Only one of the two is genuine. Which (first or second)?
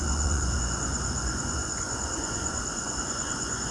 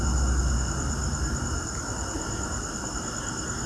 second